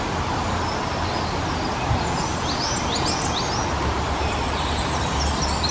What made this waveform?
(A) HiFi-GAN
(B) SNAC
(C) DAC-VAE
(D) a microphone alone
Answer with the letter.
D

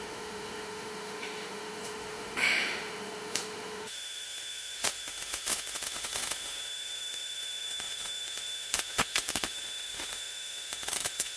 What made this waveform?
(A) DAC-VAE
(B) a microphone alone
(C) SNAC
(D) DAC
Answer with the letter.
A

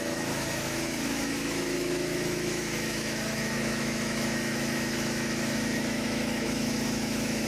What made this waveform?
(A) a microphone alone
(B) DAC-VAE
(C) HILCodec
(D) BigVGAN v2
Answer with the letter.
B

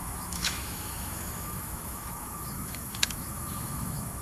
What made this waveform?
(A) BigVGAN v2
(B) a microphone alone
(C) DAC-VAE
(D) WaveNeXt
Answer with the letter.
C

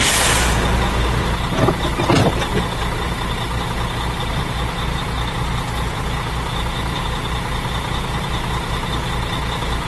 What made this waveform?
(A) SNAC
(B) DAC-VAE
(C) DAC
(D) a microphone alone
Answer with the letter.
D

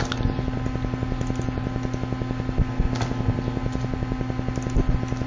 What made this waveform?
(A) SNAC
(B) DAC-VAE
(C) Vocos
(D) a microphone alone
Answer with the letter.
D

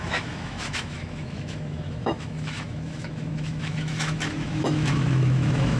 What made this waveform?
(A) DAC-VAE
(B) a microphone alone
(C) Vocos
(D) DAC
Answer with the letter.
A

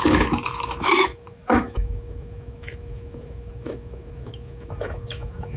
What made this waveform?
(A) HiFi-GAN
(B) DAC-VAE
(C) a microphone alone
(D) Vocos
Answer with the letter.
B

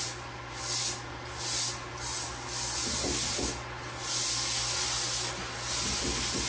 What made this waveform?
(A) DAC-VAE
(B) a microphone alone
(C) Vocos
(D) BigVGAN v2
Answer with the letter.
B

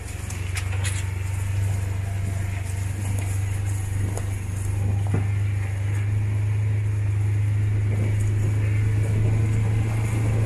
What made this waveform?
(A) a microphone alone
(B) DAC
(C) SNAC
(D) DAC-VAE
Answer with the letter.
A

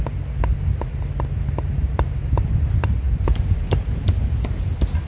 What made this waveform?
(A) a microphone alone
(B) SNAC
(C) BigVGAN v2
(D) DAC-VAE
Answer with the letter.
A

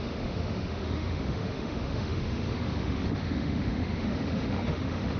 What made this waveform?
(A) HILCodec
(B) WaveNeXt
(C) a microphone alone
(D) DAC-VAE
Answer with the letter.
D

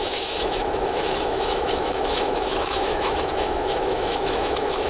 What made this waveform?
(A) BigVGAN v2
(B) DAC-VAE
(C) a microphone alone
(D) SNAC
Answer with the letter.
B